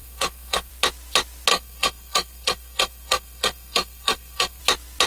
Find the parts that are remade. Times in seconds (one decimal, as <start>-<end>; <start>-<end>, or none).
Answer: 0.0-0.7; 1.5-4.6